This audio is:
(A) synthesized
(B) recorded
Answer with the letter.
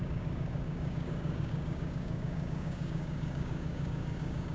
A